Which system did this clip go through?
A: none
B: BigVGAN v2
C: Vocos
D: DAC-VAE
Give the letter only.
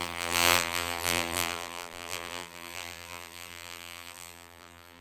B